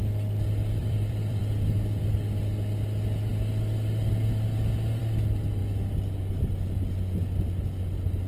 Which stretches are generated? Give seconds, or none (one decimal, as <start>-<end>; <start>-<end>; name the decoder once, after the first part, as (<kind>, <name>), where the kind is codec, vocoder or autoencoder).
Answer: 0.8-1.4 (vocoder, BigVGAN v2)